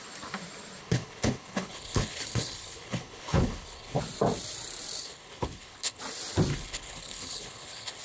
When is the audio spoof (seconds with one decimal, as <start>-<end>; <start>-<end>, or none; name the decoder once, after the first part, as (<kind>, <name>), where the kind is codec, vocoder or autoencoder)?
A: 0.8-4.0 (codec, HILCodec); 5.0-6.0; 6.5-8.0